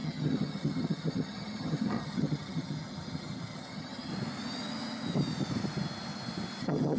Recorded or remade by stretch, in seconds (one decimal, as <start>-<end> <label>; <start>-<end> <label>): 0.0-4.1 remade; 4.1-6.6 recorded; 6.6-7.0 remade